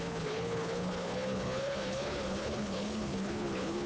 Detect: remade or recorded remade